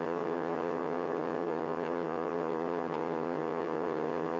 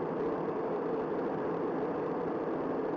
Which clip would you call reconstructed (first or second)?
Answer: first